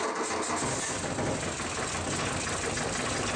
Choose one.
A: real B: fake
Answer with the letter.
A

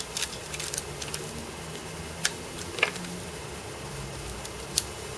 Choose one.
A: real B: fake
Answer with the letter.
A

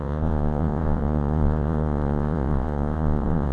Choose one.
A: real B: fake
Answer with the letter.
B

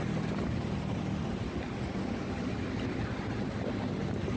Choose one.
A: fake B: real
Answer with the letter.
B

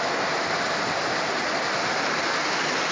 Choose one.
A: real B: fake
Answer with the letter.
A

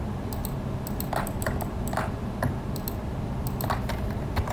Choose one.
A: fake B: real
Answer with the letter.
B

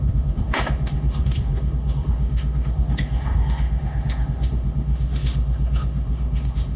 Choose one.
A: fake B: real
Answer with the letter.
A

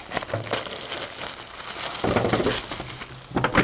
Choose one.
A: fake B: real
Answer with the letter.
B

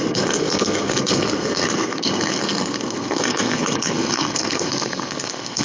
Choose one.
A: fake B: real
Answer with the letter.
A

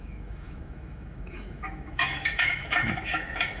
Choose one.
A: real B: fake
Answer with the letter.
B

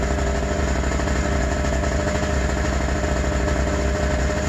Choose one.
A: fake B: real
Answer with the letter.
B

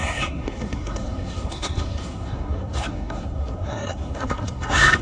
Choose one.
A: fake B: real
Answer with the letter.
A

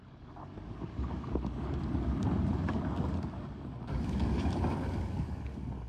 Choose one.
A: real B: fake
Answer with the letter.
B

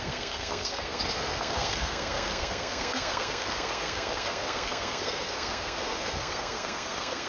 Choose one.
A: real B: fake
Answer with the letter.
B